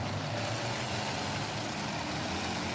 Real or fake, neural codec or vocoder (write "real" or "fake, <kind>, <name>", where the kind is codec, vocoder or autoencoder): real